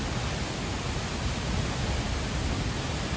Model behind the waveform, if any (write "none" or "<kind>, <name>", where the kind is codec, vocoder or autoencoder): none